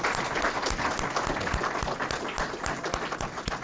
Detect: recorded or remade recorded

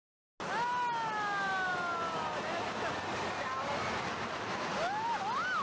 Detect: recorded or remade recorded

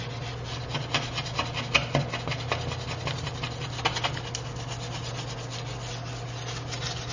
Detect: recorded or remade recorded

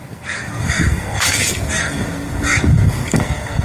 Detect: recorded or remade remade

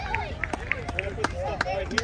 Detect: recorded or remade recorded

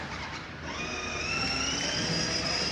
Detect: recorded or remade recorded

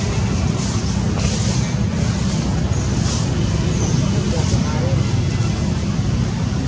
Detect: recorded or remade recorded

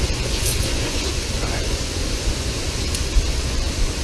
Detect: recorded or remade remade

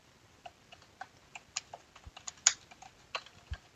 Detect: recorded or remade recorded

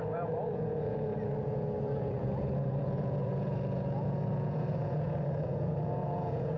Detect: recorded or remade remade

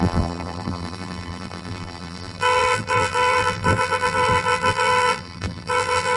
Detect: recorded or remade remade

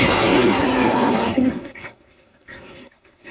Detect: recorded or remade remade